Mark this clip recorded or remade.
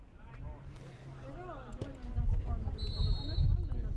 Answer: recorded